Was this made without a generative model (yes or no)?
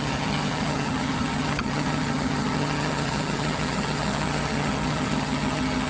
no